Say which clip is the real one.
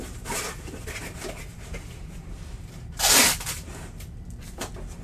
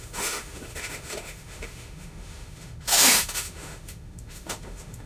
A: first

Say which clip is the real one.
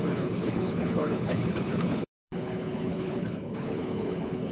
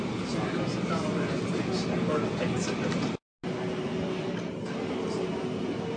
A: second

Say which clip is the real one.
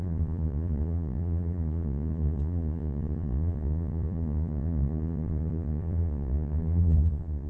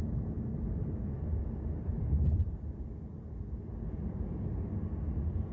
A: second